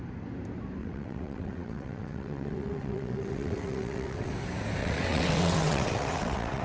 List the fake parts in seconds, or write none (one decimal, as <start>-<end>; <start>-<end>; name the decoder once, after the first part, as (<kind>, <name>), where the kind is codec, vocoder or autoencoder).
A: 0.8-4.3 (vocoder, WaveNeXt); 4.8-6.6